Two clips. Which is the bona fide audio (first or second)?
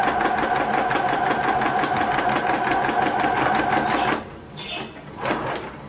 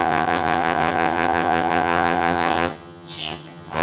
first